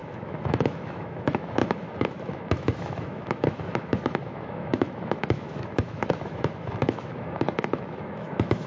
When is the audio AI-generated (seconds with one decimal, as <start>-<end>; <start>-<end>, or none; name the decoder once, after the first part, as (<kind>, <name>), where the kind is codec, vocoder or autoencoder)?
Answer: 0.0-8.7 (autoencoder, DAC-VAE)